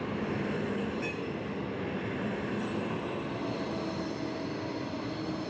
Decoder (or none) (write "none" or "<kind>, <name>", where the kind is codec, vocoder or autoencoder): none